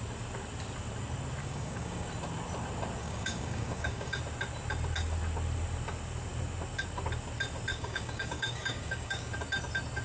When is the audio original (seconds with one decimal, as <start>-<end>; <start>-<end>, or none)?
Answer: 0.0-1.4; 2.1-3.0; 4.2-7.7; 9.3-10.0